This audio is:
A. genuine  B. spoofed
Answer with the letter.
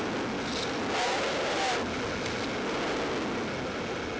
A